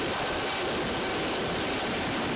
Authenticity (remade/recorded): remade